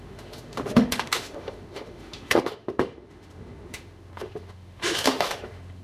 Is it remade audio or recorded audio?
remade